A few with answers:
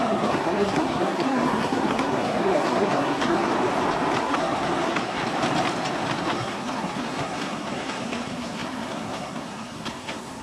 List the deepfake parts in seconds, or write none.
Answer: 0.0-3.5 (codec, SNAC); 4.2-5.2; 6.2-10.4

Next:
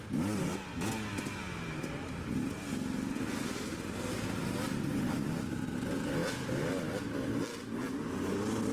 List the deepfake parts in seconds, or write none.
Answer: none

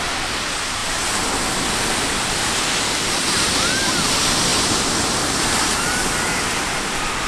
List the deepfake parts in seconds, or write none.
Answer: none

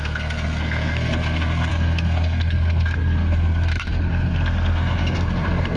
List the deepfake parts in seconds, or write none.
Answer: 0.0-5.8 (codec, SNAC)